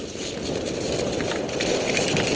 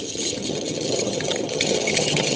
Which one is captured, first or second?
first